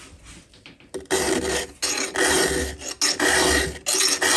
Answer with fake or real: real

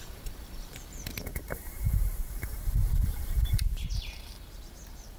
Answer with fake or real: fake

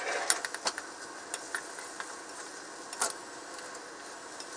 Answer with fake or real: real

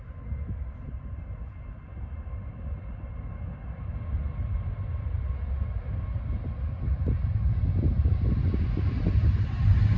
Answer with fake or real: real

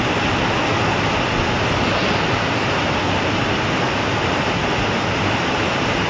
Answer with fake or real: real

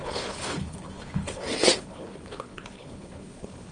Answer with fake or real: fake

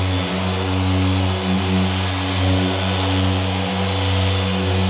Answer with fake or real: real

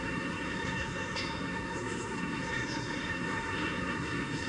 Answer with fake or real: fake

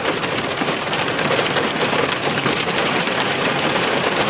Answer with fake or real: fake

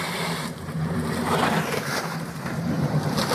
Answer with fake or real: fake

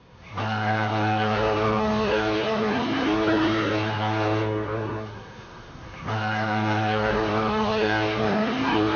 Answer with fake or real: fake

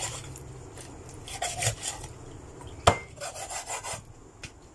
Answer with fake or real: real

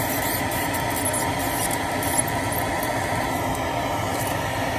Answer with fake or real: real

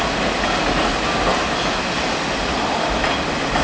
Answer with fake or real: real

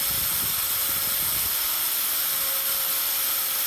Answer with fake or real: real